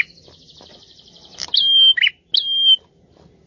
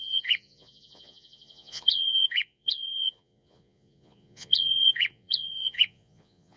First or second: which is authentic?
first